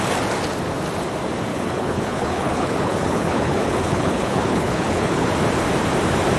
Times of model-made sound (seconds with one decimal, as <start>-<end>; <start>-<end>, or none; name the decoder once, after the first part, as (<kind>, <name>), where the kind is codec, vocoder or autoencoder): 1.5-5.3 (codec, HILCodec)